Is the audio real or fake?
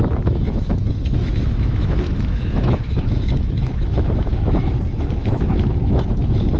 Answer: fake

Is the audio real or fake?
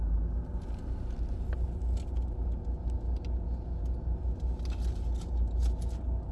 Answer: real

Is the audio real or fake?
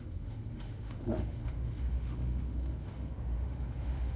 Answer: fake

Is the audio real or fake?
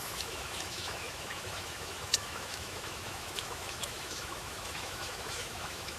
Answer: fake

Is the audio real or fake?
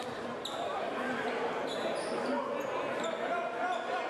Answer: real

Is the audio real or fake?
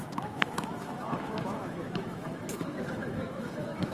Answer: fake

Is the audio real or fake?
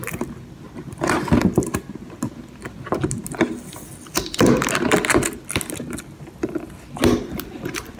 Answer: real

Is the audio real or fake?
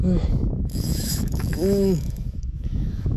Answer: fake